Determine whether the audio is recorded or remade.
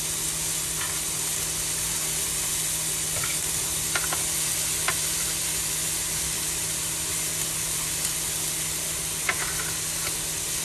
recorded